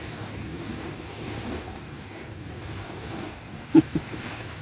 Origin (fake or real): fake